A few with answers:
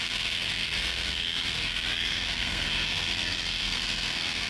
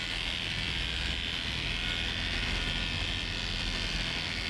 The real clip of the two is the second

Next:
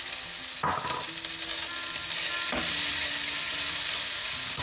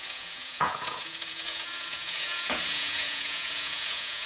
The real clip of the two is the first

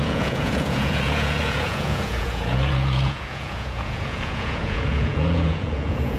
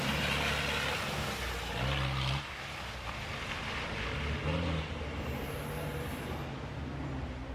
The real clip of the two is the second